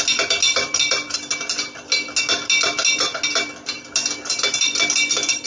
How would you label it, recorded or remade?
recorded